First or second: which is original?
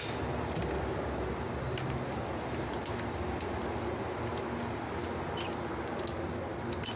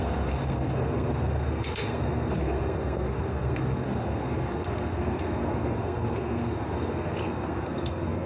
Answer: first